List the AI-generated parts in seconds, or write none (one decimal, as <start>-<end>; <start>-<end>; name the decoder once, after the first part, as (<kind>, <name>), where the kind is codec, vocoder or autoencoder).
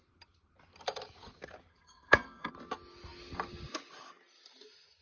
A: 1.7-2.5 (codec, SNAC)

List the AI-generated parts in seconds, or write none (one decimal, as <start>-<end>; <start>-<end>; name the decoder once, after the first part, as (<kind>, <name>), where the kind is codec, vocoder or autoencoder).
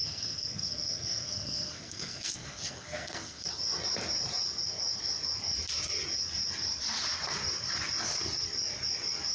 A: 0.0-3.5 (codec, SNAC)